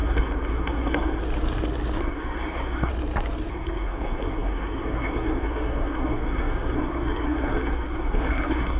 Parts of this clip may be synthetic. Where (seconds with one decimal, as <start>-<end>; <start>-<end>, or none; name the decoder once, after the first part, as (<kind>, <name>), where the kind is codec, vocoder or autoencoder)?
0.0-1.2 (codec, SNAC); 2.0-2.9; 3.5-8.8